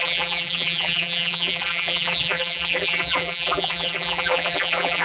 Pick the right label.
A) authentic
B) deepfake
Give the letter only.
B